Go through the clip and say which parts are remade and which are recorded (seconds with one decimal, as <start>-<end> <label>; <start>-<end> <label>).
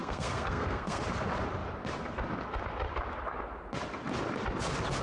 0.0-1.0 remade; 1.0-5.0 recorded